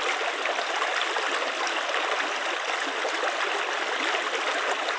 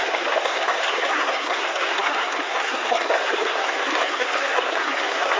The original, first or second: first